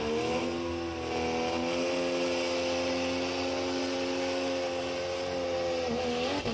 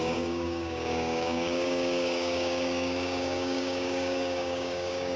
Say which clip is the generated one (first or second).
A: second